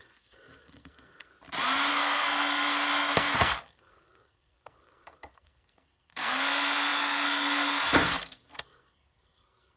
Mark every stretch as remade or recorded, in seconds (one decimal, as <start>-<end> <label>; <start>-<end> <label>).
0.0-1.3 remade; 1.3-1.9 recorded; 1.9-9.8 remade

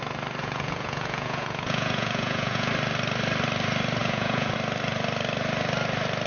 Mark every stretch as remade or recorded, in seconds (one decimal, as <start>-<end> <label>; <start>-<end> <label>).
0.0-0.4 recorded; 0.4-2.7 remade; 2.7-4.0 recorded; 4.0-4.5 remade; 4.5-6.3 recorded